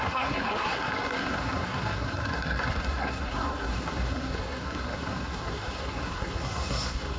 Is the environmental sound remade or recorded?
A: remade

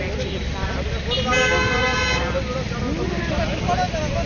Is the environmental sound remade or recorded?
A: recorded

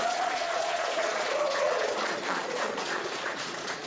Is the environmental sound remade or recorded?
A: remade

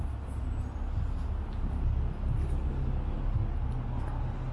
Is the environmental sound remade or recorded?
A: recorded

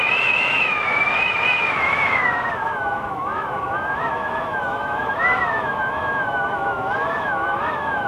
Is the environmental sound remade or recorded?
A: remade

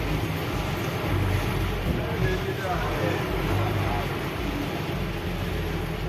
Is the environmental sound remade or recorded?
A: recorded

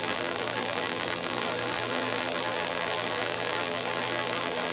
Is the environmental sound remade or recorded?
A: remade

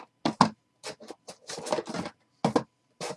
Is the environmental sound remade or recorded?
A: recorded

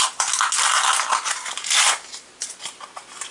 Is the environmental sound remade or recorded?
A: recorded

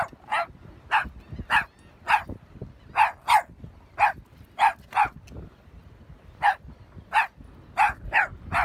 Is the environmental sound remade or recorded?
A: recorded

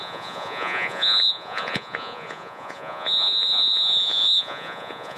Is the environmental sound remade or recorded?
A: remade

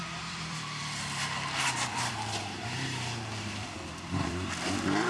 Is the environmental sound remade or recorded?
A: remade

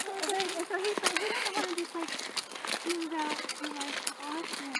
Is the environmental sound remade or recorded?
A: recorded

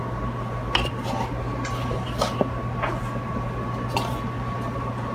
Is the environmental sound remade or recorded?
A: recorded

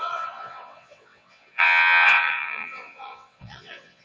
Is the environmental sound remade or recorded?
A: remade